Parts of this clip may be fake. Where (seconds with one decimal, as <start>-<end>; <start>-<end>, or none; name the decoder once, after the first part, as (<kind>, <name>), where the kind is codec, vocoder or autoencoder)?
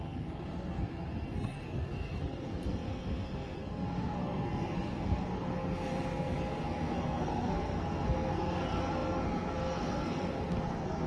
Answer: 0.0-11.1 (codec, SNAC)